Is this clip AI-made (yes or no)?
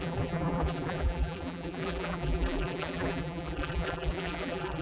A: yes